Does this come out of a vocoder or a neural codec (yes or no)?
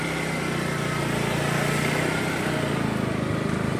no